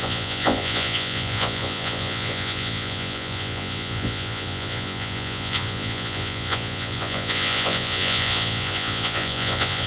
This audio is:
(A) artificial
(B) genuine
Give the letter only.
A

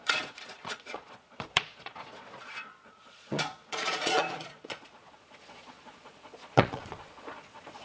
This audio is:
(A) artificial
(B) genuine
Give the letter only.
A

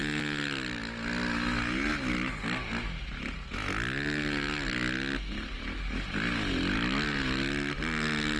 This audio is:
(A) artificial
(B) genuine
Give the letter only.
B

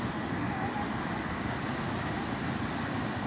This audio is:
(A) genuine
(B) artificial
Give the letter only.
A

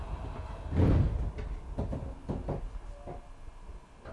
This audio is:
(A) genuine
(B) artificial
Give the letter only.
A